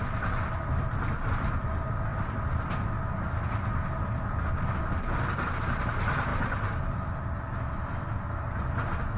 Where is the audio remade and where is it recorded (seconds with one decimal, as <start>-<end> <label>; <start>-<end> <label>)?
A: 0.0-9.2 recorded